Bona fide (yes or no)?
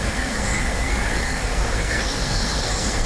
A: no